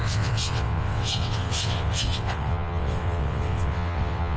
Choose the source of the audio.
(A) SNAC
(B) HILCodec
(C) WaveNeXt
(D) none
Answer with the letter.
C